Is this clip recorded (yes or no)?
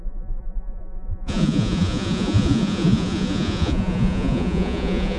no